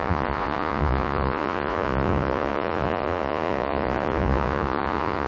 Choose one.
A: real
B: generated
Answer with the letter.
B